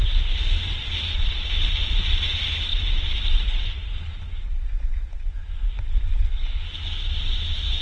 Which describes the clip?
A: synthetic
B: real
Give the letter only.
B